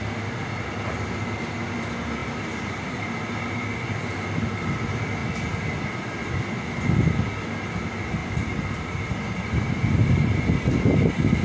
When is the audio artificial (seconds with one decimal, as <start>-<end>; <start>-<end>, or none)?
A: 2.2-3.6; 8.2-9.7